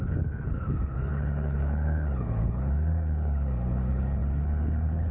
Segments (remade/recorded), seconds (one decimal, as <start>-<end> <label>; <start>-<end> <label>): 0.0-5.1 remade